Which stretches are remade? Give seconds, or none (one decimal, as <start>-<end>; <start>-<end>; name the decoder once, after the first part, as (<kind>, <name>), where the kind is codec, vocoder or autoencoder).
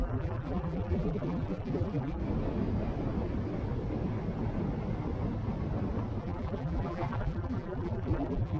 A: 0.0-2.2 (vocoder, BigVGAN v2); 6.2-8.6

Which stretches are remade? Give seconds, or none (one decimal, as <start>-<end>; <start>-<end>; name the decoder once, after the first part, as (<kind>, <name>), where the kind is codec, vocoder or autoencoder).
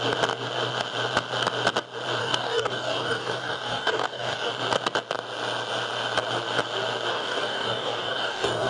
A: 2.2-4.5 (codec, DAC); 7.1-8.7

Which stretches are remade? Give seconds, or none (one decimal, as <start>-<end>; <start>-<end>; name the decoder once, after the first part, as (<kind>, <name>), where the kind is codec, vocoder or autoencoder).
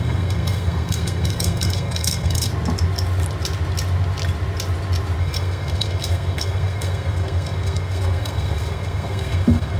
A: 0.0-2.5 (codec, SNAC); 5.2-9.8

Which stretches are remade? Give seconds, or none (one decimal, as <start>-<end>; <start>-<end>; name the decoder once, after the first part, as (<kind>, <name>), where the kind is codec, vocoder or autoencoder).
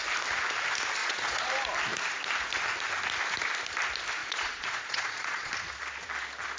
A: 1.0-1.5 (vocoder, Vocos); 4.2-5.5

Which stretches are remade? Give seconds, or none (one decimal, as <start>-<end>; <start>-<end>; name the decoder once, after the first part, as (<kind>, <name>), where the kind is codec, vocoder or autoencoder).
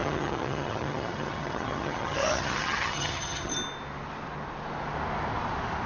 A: 0.0-3.5 (vocoder, HiFi-GAN)